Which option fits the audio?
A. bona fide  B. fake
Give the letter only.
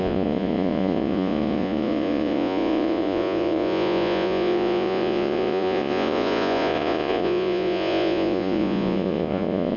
B